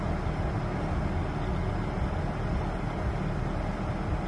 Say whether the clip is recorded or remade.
recorded